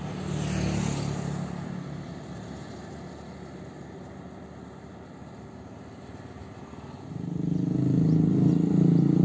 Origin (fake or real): real